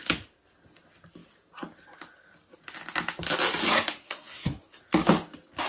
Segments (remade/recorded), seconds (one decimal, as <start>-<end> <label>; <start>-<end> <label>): 0.0-4.0 recorded; 4.0-4.8 remade; 4.8-5.7 recorded